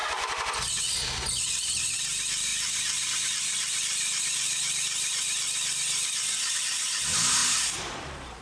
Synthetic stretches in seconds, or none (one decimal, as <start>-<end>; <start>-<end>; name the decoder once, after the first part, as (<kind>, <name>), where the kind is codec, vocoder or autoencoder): 2.5-3.1 (vocoder, BigVGAN v2); 7.4-8.4